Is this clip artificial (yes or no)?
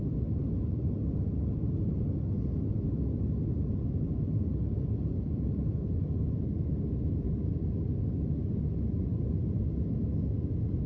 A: no